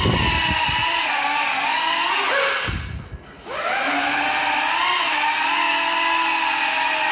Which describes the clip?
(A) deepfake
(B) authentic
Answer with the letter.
B